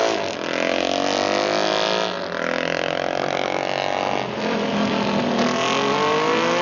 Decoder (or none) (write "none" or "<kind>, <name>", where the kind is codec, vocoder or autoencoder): none